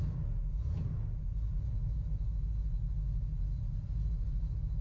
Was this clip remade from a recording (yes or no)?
no